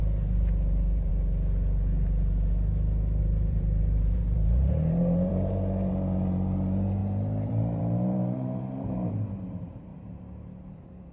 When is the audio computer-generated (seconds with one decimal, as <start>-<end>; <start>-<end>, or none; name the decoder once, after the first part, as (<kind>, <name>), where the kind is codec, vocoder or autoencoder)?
0.0-1.1 (vocoder, BigVGAN v2); 3.2-9.9; 10.7-11.1